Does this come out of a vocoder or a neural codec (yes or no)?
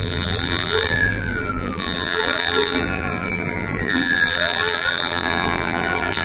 yes